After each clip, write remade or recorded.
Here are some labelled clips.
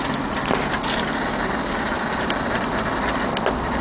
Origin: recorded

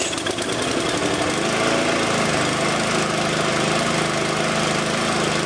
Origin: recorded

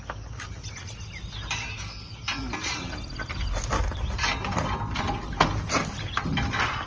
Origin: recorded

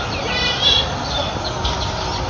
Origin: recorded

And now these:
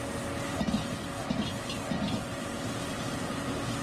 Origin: recorded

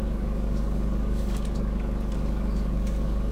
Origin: remade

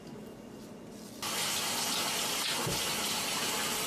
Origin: recorded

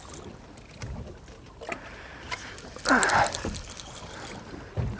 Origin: recorded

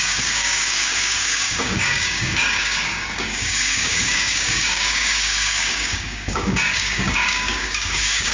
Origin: remade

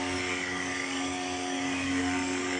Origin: remade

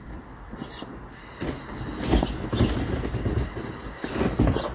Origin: recorded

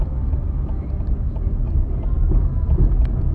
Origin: recorded